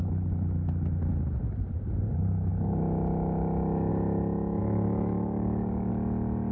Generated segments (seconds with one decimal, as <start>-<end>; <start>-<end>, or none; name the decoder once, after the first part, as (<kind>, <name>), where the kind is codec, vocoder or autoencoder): 4.6-5.9 (codec, DAC)